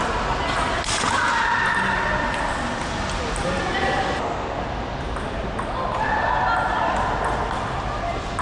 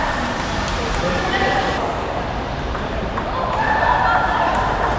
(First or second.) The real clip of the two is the first